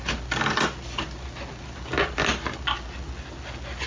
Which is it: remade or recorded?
recorded